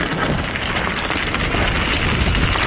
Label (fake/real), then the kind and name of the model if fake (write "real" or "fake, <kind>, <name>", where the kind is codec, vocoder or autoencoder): real